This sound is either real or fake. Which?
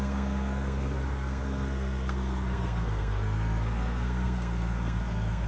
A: fake